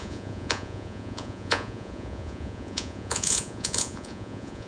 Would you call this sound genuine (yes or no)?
no